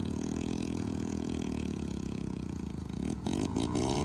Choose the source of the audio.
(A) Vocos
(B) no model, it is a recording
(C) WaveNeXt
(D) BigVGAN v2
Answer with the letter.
A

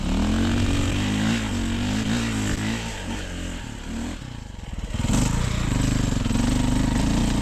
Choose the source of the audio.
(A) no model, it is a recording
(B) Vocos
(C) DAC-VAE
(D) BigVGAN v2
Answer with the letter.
A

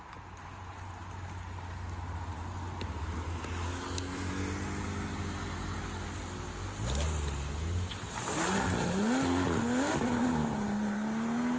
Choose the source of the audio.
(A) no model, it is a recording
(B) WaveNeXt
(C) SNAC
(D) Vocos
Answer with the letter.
A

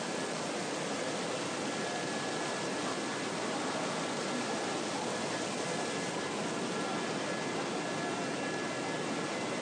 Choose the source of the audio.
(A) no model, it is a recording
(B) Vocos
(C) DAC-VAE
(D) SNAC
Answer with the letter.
A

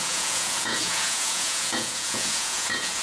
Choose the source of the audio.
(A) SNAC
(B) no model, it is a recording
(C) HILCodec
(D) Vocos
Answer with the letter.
D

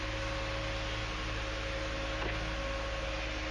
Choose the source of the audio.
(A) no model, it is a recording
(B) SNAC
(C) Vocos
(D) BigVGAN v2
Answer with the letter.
A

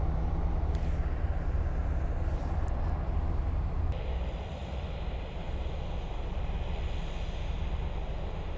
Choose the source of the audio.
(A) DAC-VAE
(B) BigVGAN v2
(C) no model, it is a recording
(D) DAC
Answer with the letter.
C